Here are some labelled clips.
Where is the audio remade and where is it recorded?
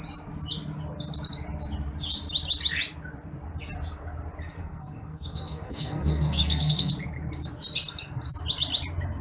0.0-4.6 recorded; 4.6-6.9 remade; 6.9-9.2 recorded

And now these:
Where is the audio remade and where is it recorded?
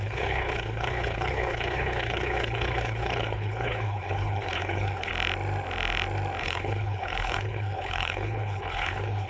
0.0-5.1 remade; 5.1-6.4 recorded; 6.4-9.3 remade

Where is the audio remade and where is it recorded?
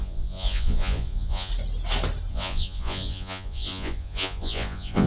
0.0-1.5 remade; 1.5-2.3 recorded; 2.3-5.1 remade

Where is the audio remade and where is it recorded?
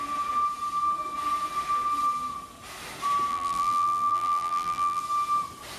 0.0-3.3 recorded; 3.3-5.0 remade; 5.0-5.8 recorded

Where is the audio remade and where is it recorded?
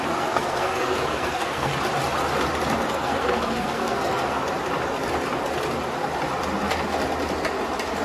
0.0-1.7 remade; 1.7-2.9 recorded; 2.9-4.4 remade; 4.4-8.0 recorded